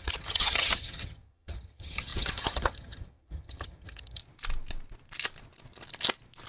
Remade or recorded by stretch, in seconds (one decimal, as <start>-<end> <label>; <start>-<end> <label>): 0.0-4.2 remade; 4.2-6.5 recorded